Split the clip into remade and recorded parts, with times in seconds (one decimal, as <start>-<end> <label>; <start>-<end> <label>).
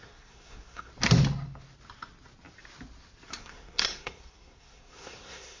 0.0-0.9 remade; 0.9-3.4 recorded; 3.4-5.6 remade